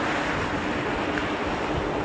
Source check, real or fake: real